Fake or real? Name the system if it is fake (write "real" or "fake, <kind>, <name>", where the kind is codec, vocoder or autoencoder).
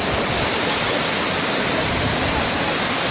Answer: fake, vocoder, BigVGAN v2